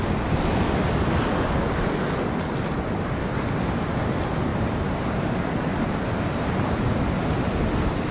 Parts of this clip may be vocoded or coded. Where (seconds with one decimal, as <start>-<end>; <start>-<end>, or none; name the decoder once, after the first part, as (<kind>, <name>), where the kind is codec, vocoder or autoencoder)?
4.5-6.2 (vocoder, BigVGAN v2)